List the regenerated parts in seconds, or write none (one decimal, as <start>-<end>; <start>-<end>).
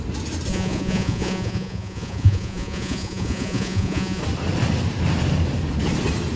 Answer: 0.5-4.2